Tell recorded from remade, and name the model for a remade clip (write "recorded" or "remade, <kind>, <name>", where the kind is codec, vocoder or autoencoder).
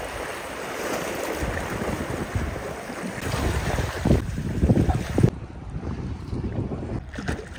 remade, vocoder, BigVGAN v2